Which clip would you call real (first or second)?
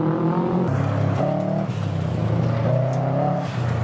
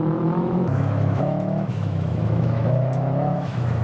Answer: first